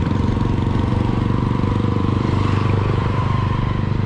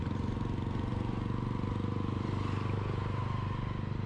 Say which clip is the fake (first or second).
first